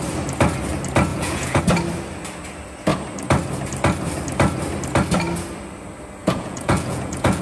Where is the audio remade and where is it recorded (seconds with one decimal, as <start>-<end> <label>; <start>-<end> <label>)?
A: 0.0-1.1 recorded; 1.1-1.6 remade; 1.6-6.2 recorded; 6.2-7.4 remade

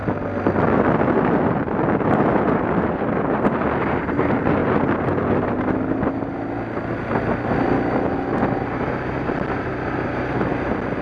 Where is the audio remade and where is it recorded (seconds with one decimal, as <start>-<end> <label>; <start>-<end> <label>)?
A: 0.0-11.0 recorded

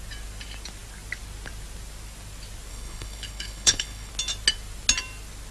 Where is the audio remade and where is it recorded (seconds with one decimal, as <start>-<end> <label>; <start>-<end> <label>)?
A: 0.0-2.7 recorded; 2.7-4.1 remade; 4.1-5.5 recorded

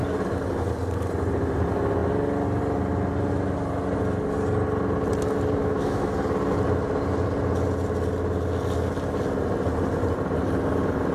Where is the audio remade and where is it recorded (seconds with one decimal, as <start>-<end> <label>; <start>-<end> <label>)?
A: 0.0-5.6 recorded; 5.6-6.1 remade; 6.1-11.1 recorded

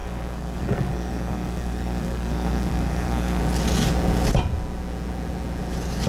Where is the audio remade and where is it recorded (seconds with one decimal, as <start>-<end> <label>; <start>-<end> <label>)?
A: 0.0-3.4 remade; 3.4-6.1 recorded

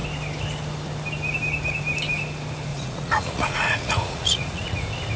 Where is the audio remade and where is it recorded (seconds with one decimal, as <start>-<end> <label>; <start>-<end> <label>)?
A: 0.0-2.7 recorded; 2.7-4.8 remade; 4.8-5.2 recorded

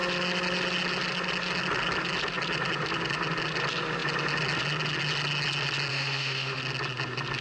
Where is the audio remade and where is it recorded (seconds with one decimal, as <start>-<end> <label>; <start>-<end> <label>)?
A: 0.0-5.9 recorded; 5.9-6.6 remade; 6.6-7.4 recorded